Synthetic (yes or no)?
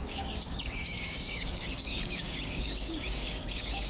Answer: yes